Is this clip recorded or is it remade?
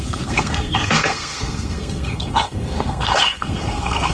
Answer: remade